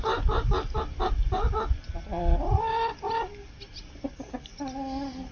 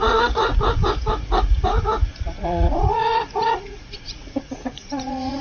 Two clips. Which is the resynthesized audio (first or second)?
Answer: second